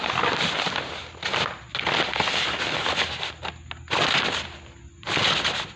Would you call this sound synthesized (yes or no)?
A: no